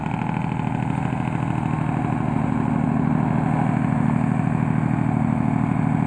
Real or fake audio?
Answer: real